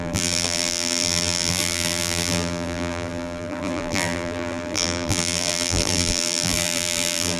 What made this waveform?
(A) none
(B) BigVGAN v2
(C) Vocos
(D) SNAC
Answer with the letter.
B